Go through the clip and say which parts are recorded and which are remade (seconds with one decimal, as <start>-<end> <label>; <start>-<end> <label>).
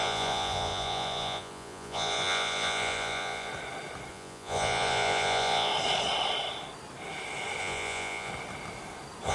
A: 0.0-3.5 remade; 3.5-4.1 recorded; 4.1-5.7 remade; 5.7-7.6 recorded; 7.6-8.3 remade; 8.3-9.3 recorded